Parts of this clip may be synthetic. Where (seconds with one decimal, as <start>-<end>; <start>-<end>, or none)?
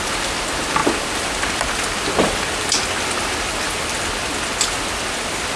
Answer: none